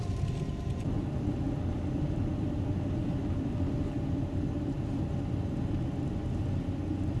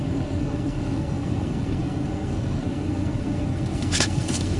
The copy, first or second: second